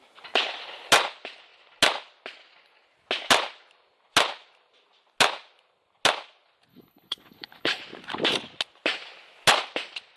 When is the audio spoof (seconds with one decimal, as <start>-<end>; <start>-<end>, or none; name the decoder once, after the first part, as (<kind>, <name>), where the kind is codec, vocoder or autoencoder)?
6.7-7.8 (codec, HILCodec)